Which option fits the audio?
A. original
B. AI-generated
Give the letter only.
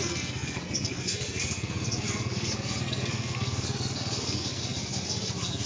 B